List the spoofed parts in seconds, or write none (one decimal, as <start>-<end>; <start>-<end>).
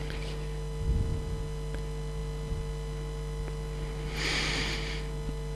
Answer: none